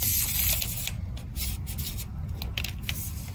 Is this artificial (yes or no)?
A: no